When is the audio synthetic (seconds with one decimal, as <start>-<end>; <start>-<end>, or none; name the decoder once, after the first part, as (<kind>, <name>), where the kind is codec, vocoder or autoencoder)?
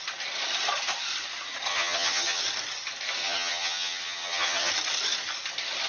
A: 1.7-2.4 (vocoder, HiFi-GAN); 3.2-4.7